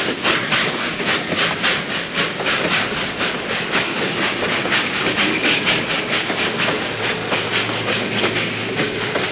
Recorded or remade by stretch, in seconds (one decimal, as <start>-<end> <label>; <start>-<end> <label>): 0.0-7.2 remade; 7.2-7.8 recorded; 7.8-9.3 remade